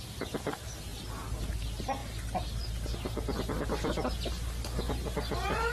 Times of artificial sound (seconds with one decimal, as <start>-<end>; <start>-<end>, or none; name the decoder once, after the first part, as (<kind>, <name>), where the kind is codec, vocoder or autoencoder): none